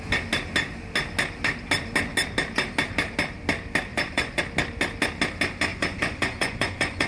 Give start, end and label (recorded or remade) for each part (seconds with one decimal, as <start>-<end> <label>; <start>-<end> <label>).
0.0-3.9 recorded; 3.9-4.4 remade; 4.4-5.7 recorded; 5.7-7.1 remade

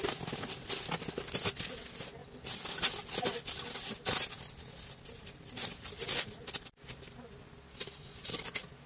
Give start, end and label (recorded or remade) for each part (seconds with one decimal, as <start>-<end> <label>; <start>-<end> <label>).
0.0-8.9 recorded

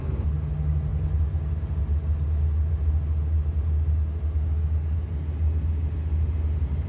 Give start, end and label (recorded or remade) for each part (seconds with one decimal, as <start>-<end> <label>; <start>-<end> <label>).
0.0-6.9 recorded

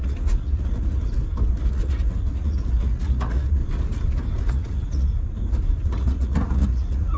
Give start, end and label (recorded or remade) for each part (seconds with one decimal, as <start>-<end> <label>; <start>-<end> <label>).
0.0-1.2 remade; 1.2-1.7 recorded; 1.7-3.6 remade; 3.6-4.4 recorded; 4.4-5.1 remade; 5.1-5.8 recorded; 5.8-7.2 remade

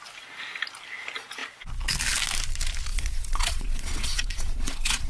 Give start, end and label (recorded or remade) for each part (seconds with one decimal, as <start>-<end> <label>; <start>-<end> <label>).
0.0-2.9 recorded; 2.9-5.1 remade

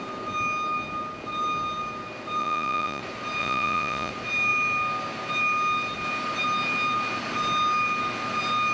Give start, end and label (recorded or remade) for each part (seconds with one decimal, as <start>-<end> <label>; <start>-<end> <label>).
0.0-2.4 recorded; 2.4-3.0 remade; 3.0-3.4 recorded; 3.4-4.1 remade; 4.1-8.7 recorded